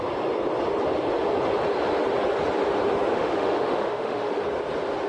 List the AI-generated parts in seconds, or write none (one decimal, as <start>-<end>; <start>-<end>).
3.1-4.3